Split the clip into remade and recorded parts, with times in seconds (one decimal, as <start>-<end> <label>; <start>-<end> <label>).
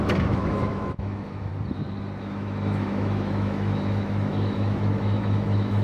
0.0-1.5 remade; 1.5-2.2 recorded; 2.2-5.8 remade